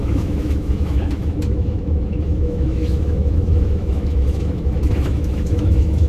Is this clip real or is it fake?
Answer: fake